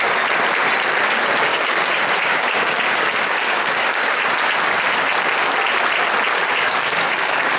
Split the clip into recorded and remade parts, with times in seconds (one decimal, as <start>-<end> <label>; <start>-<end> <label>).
0.0-1.5 recorded; 1.5-4.2 remade; 4.2-6.3 recorded; 6.3-7.6 remade